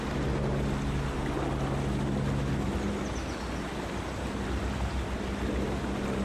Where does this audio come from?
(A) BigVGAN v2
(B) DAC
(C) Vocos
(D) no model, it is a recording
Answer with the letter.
D